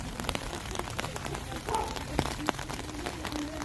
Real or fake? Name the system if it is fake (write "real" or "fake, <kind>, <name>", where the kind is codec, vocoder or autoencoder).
fake, vocoder, BigVGAN v2